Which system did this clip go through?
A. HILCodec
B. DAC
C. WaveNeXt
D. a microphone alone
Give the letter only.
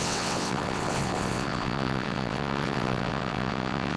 C